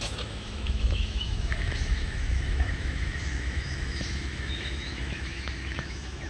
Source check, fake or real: fake